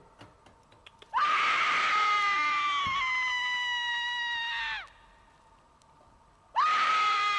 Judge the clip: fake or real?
real